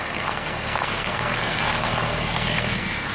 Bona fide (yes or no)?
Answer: no